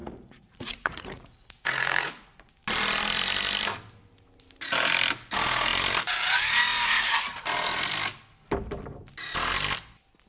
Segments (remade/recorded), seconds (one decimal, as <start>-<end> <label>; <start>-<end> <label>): 0.0-2.5 remade; 2.5-10.3 recorded